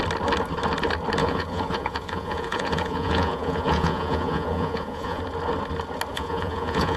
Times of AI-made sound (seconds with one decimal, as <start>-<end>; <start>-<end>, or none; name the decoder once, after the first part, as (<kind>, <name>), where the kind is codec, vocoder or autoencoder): 1.2-5.2 (vocoder, Vocos); 6.1-7.0